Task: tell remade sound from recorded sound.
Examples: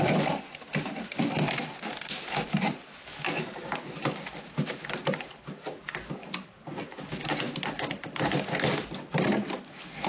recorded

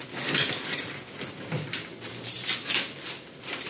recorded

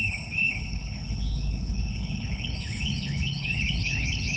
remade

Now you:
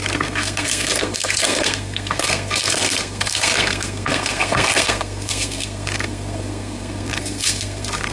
remade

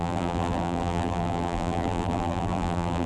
remade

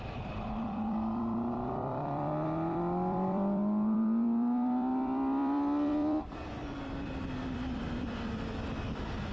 remade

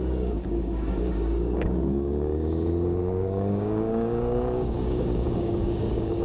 remade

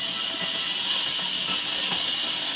recorded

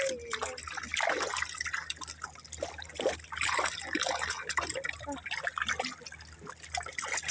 recorded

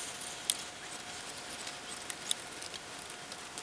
recorded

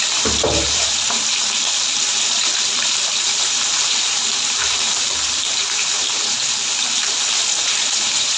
remade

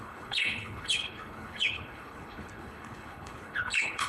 remade